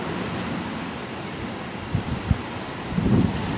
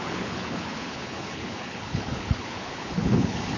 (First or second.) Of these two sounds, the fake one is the second